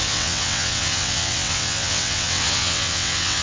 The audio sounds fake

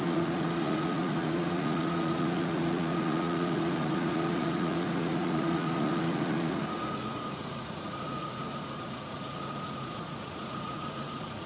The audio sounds fake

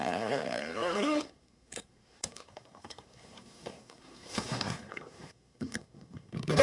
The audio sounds fake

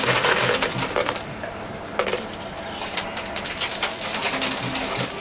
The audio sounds real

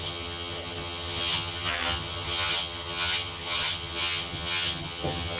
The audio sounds fake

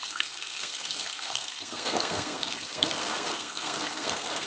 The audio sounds fake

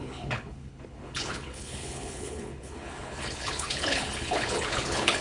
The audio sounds fake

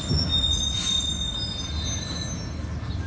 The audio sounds real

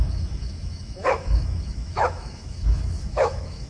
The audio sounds fake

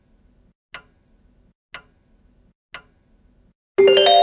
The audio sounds real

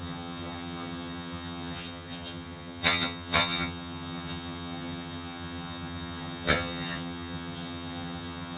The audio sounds fake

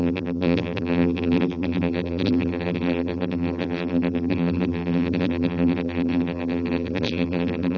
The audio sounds fake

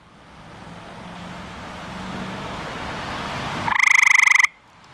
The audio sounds real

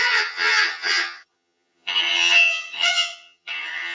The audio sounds fake